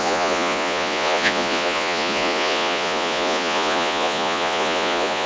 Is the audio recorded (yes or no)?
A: no